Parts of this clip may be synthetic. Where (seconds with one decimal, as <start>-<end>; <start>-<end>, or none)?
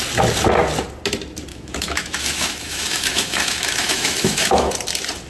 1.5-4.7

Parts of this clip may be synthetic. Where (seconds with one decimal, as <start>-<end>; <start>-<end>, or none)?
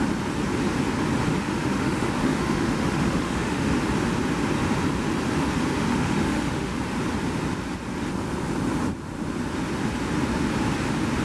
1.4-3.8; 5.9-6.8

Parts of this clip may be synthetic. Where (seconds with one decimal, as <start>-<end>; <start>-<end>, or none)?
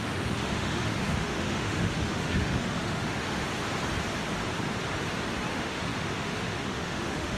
0.0-3.5; 5.5-7.4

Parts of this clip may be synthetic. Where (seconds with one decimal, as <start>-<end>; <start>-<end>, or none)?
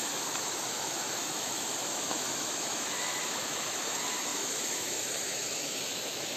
0.0-6.4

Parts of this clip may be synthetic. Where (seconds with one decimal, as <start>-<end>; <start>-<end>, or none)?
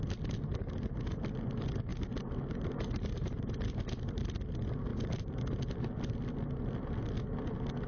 none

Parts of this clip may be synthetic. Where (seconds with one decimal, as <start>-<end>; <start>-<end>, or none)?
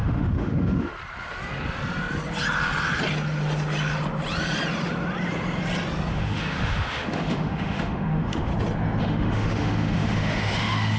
0.0-0.9; 6.1-8.5; 9.0-11.0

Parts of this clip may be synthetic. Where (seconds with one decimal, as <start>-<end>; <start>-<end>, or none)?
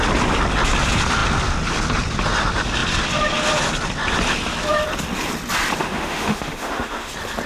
5.8-7.1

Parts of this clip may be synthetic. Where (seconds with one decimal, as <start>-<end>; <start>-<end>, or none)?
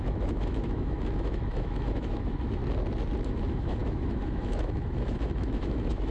0.0-2.6; 3.2-6.1